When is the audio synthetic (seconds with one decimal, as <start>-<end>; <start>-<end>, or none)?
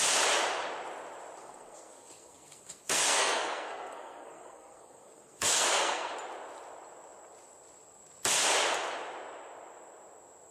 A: 1.4-6.1